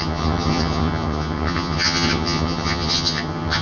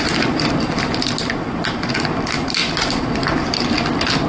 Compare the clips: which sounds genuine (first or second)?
second